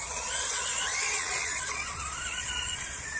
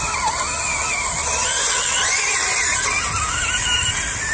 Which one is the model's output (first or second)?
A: first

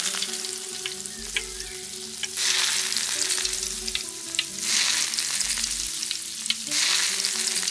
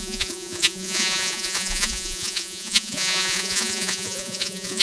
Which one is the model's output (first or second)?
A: second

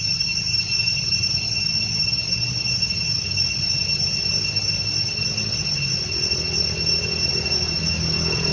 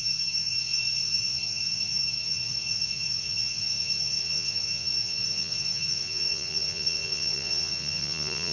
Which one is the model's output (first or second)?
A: second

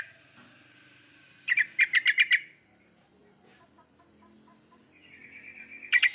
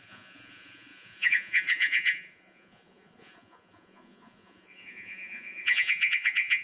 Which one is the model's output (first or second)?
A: second